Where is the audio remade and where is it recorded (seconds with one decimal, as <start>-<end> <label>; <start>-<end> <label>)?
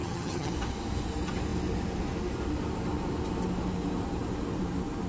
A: 0.0-0.5 remade; 0.5-5.1 recorded